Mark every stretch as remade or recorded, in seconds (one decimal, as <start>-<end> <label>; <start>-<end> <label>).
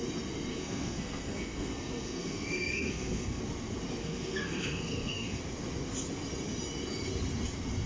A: 0.0-0.5 recorded; 0.5-3.4 remade; 3.4-4.0 recorded; 4.0-5.4 remade; 5.4-7.9 recorded